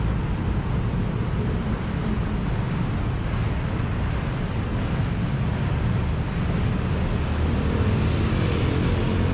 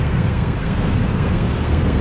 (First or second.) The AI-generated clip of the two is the second